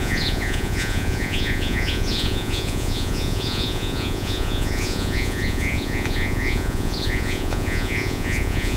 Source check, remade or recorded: remade